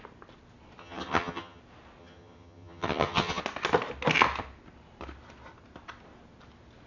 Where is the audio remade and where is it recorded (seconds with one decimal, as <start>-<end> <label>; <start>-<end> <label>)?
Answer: 0.0-0.8 recorded; 0.8-1.6 remade; 1.6-2.0 recorded; 2.0-3.4 remade; 3.4-6.9 recorded